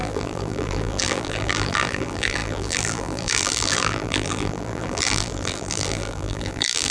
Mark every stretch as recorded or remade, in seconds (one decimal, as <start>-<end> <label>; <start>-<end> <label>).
0.0-6.9 remade